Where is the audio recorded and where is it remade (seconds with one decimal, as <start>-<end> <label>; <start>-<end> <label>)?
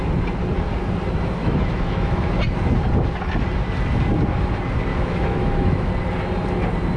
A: 0.0-1.4 recorded; 1.4-2.3 remade; 2.3-4.9 recorded; 4.9-5.9 remade; 5.9-7.0 recorded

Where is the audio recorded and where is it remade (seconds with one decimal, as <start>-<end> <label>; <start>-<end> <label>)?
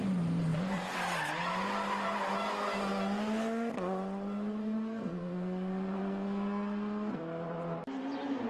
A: 0.0-4.6 recorded; 4.6-7.2 remade; 7.2-8.5 recorded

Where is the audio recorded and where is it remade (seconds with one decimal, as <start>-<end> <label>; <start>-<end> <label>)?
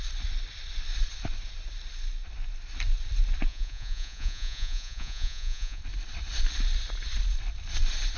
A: 0.0-3.5 recorded; 3.5-5.8 remade; 5.8-8.2 recorded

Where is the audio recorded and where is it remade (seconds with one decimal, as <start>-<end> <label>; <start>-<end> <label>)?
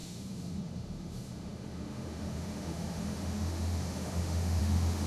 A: 0.0-5.1 remade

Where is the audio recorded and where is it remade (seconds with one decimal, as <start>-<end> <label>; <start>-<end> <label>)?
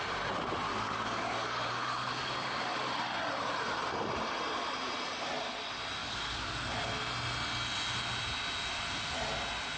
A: 0.0-0.7 recorded; 0.7-2.9 remade; 2.9-6.0 recorded; 6.0-6.6 remade; 6.6-9.8 recorded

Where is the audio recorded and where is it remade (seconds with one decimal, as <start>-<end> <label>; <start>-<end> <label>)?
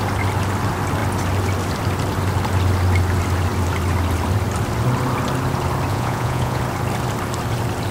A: 0.0-5.9 recorded; 5.9-6.6 remade; 6.6-7.9 recorded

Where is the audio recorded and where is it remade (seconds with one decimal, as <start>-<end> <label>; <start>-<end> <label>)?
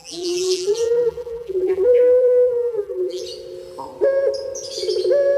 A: 0.0-3.2 remade; 3.2-5.4 recorded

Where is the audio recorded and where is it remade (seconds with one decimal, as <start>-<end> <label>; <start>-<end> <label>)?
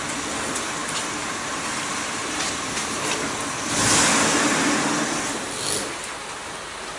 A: 0.0-0.8 recorded; 0.8-3.2 remade; 3.2-7.0 recorded